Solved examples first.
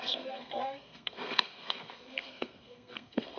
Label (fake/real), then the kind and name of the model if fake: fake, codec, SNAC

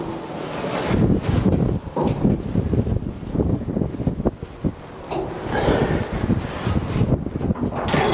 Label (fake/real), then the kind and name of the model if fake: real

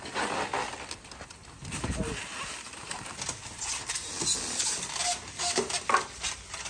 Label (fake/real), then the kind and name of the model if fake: real